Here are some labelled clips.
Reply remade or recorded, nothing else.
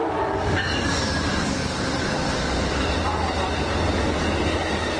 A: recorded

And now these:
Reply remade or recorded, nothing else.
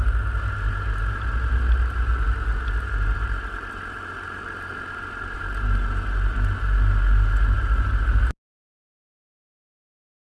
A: recorded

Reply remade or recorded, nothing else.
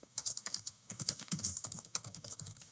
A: remade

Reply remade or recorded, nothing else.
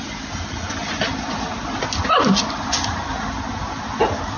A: recorded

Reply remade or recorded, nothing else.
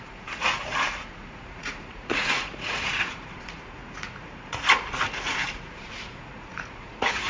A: remade